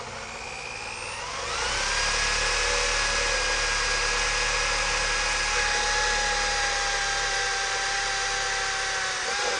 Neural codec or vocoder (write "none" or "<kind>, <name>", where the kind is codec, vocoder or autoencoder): none